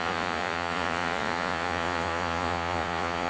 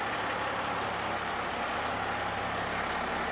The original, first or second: second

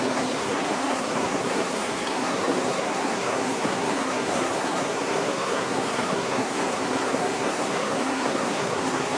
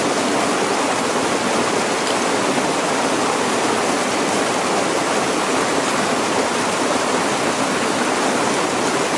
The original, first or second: second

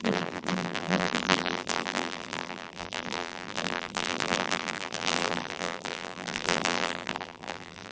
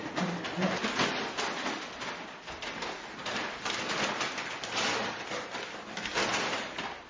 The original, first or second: second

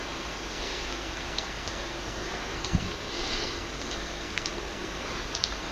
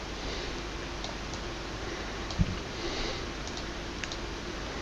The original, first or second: second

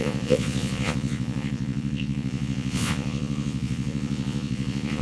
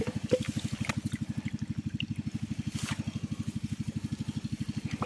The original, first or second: second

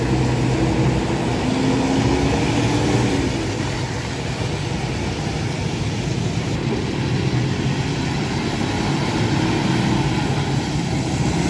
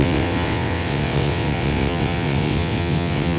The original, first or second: first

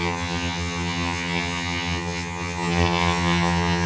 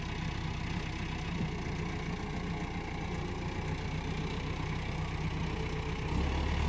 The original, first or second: second